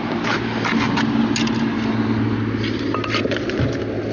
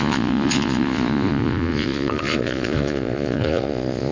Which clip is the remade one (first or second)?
second